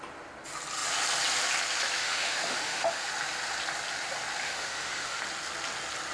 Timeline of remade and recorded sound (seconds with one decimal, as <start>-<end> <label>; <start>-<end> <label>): 0.0-2.0 recorded; 2.0-3.1 remade; 3.1-4.4 recorded; 4.4-5.2 remade; 5.2-6.1 recorded

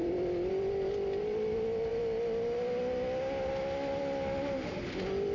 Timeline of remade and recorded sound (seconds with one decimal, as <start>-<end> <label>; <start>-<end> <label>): 0.0-5.3 recorded

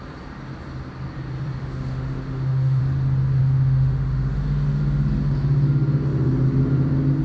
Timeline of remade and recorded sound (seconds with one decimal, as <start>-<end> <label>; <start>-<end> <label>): 0.0-1.6 recorded; 1.6-2.8 remade; 2.8-3.4 recorded; 3.4-4.8 remade; 4.8-7.2 recorded

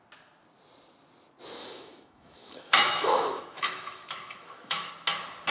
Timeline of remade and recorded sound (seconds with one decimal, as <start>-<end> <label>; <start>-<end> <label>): 0.0-1.6 recorded; 1.6-4.9 remade; 4.9-5.5 recorded

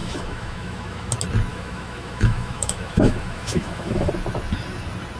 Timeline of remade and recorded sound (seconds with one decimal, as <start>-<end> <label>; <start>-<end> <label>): 0.0-1.1 remade; 1.1-1.5 recorded; 1.5-4.1 remade; 4.1-5.2 recorded